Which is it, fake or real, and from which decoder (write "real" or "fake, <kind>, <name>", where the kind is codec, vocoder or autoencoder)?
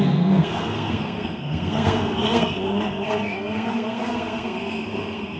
fake, codec, SNAC